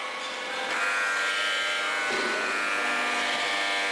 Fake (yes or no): no